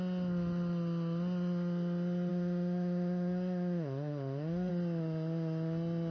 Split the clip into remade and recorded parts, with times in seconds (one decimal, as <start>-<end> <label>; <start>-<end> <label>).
0.0-2.3 recorded; 2.3-4.7 remade; 4.7-6.1 recorded